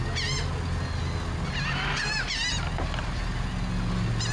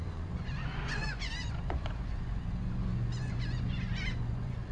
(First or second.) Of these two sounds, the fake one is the second